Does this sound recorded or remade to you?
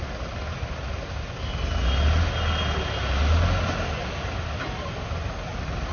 recorded